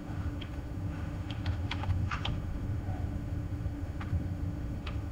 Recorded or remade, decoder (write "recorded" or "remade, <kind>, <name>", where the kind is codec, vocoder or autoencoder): remade, autoencoder, DAC-VAE